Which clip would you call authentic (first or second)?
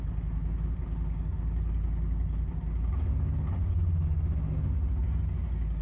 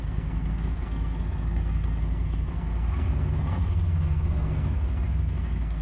first